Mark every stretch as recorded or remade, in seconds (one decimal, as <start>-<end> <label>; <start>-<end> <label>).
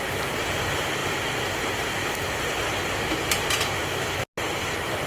0.0-5.1 recorded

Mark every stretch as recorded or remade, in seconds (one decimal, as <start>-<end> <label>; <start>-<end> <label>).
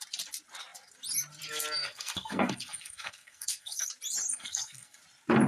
0.0-1.8 recorded; 1.8-3.9 remade; 3.9-4.3 recorded; 4.3-5.0 remade; 5.0-5.5 recorded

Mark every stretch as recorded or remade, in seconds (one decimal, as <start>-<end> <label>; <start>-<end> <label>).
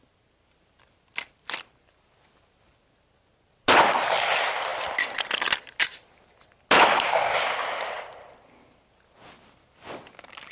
0.0-10.5 recorded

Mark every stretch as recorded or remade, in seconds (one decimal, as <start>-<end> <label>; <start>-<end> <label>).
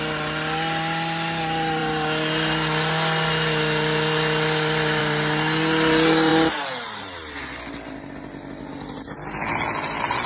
0.0-10.3 recorded